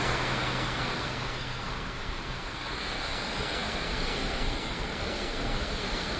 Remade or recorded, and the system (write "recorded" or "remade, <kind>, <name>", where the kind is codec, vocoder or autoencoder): remade, codec, SNAC